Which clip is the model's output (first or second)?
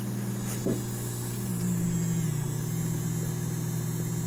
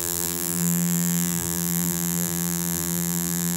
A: second